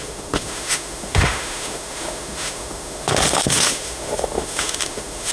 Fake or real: fake